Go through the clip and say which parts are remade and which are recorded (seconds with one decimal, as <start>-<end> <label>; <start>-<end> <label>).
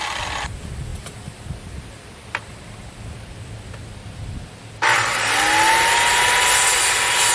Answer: 0.0-7.3 recorded